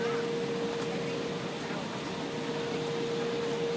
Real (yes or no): yes